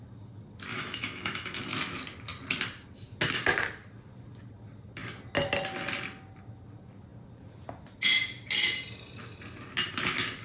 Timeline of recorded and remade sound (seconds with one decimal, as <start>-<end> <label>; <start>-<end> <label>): 0.0-0.7 recorded; 0.7-1.6 remade; 1.6-10.4 recorded